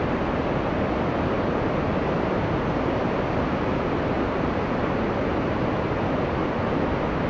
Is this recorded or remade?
recorded